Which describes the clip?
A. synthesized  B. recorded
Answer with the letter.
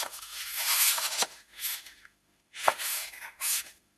A